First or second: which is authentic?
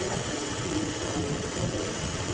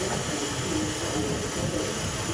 second